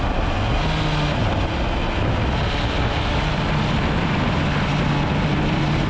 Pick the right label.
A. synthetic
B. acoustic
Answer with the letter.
B